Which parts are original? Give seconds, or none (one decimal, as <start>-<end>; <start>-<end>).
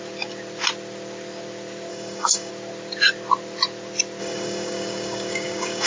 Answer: 0.0-1.9; 2.5-4.2